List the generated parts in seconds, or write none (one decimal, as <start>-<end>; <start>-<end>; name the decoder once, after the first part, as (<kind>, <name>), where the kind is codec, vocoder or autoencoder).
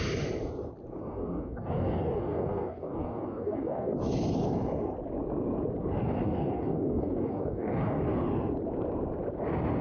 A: 1.0-4.0 (codec, DAC); 6.0-8.0